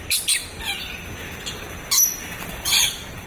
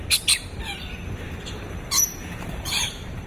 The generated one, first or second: second